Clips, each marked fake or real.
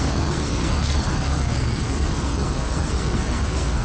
fake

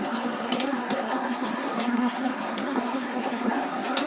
fake